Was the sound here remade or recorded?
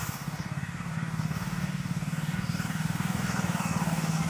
remade